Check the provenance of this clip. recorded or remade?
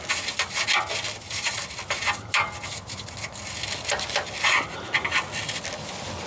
recorded